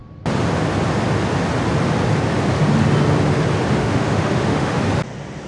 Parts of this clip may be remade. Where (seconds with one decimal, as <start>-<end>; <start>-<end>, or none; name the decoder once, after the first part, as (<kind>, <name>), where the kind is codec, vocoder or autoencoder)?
3.8-4.8 (autoencoder, DAC-VAE)